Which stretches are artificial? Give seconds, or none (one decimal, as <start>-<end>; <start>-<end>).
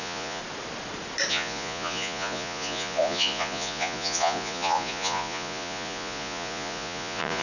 0.0-0.4; 1.3-7.4